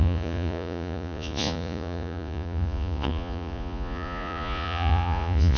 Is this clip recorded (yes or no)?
no